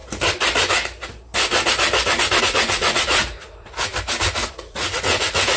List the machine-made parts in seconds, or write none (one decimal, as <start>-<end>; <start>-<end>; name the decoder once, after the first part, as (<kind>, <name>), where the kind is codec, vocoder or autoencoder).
2.4-3.9 (vocoder, Vocos); 4.5-5.6